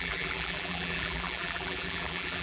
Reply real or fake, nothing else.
fake